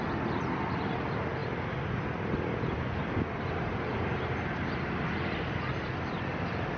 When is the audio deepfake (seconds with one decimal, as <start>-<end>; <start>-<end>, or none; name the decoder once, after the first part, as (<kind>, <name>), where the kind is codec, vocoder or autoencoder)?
none